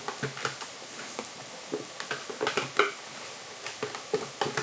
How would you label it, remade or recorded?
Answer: recorded